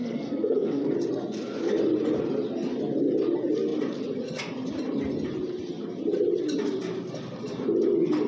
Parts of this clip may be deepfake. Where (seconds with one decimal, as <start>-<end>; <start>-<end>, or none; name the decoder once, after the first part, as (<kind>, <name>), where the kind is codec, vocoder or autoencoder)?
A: 0.0-0.9 (codec, SNAC)